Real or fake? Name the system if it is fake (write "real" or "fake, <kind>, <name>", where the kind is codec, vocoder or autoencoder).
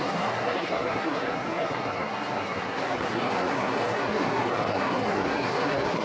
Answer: fake, codec, SNAC